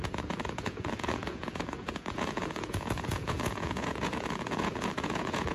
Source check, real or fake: fake